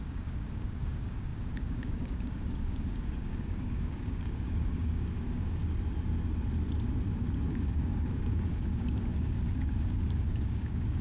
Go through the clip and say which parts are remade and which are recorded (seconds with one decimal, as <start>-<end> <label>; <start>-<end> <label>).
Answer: 0.0-5.6 remade; 5.6-7.5 recorded; 7.5-11.0 remade